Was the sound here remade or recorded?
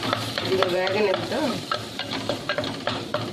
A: remade